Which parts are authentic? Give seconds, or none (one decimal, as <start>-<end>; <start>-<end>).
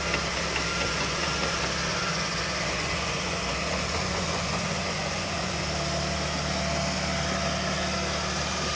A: 0.0-0.7; 1.4-1.9; 5.6-8.8